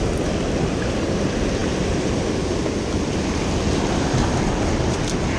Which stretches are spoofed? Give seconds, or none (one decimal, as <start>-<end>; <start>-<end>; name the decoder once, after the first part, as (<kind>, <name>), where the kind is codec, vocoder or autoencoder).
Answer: none